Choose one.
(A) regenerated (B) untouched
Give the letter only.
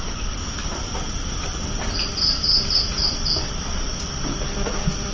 B